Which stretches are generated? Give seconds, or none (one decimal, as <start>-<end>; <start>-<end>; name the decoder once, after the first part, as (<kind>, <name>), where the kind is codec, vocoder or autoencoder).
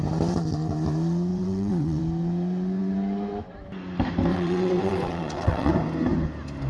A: 1.3-2.0 (vocoder, WaveNeXt); 4.3-5.7